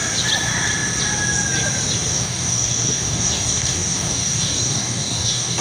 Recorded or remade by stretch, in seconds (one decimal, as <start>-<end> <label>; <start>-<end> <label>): 0.0-2.1 recorded; 2.1-5.6 remade